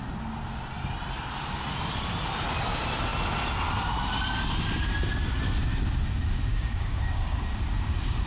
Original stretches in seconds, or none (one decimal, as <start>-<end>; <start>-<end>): 0.0-6.5; 7.4-8.3